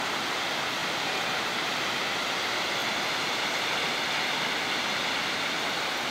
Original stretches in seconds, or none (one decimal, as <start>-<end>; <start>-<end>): 0.0-0.8; 2.0-6.1